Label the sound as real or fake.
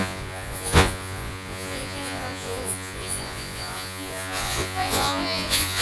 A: fake